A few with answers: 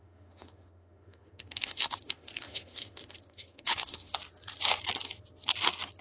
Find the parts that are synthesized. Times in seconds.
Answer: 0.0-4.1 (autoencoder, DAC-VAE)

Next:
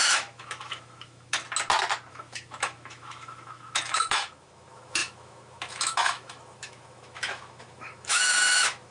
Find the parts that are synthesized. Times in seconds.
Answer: 0.0-1.4 (autoencoder, DAC-VAE); 2.1-8.9